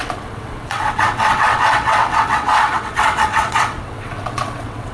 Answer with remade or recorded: remade